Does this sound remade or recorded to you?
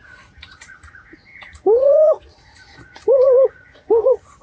remade